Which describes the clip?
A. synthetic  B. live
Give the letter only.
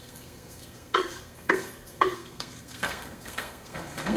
A